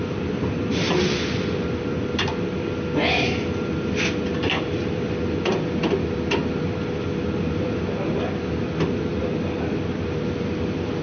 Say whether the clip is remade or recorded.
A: remade